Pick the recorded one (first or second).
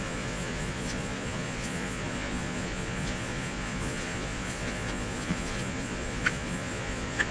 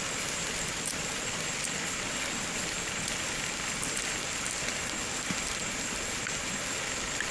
second